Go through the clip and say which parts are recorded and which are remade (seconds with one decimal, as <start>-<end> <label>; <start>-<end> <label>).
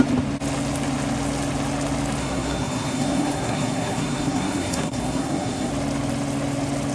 0.0-2.2 recorded; 2.2-5.7 remade; 5.7-6.9 recorded